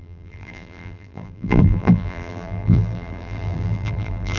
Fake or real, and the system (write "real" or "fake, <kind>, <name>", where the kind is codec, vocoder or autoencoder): fake, vocoder, BigVGAN v2